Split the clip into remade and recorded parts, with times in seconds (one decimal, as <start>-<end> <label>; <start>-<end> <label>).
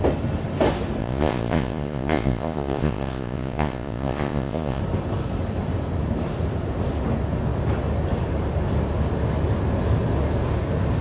0.0-1.0 recorded; 1.0-4.8 remade; 4.8-11.0 recorded